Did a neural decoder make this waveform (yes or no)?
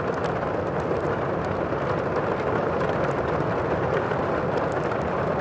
no